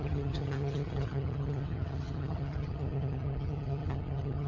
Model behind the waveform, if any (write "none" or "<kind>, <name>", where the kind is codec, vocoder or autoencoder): vocoder, HiFi-GAN